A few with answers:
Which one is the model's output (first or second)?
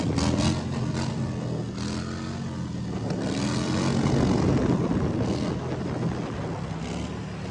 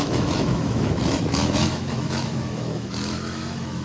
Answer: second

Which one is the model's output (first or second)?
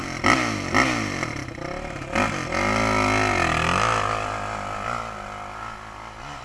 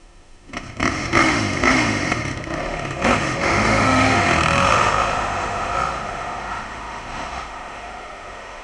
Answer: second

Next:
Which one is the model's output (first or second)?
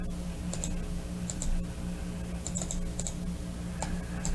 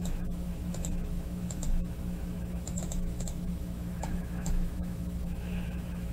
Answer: second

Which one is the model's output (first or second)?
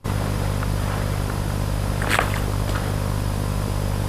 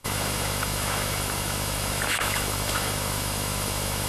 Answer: second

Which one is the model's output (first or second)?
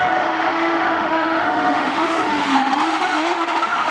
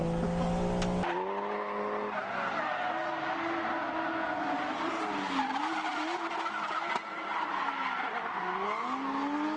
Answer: first